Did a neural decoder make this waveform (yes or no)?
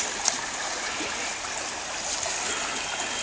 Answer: no